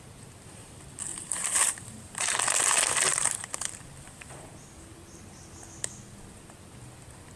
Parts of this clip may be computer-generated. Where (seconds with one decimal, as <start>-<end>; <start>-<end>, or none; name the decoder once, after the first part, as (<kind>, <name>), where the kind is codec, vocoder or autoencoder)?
1.1-4.5 (vocoder, BigVGAN v2)